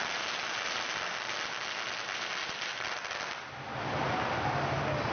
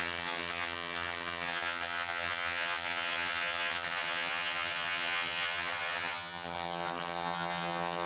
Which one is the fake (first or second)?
second